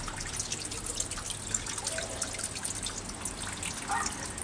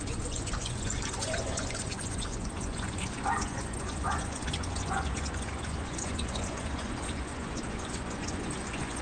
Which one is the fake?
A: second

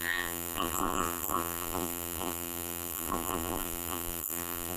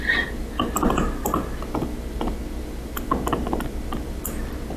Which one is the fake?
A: first